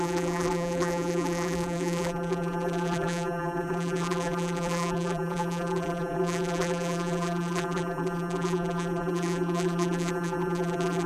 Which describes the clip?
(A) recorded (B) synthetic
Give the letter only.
B